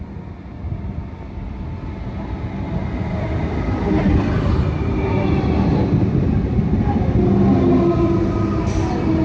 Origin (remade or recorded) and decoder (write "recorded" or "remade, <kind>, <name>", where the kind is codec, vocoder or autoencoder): recorded